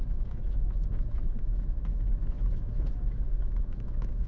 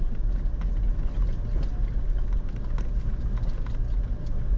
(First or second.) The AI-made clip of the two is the first